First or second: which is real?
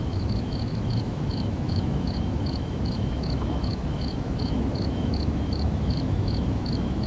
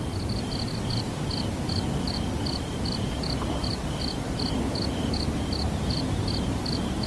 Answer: second